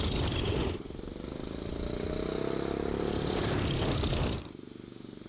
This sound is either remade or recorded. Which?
recorded